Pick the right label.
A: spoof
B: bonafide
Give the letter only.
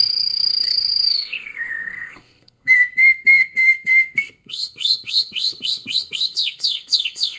A